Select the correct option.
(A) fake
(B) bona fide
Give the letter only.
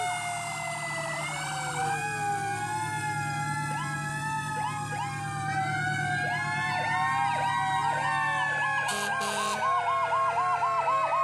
B